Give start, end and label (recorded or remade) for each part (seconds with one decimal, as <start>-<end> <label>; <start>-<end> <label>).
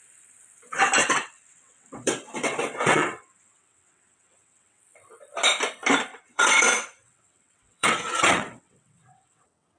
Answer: 0.0-1.0 recorded; 1.0-4.8 remade; 4.8-6.1 recorded; 6.1-9.8 remade